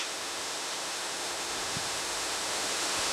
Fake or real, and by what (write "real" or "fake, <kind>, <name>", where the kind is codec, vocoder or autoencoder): fake, autoencoder, DAC-VAE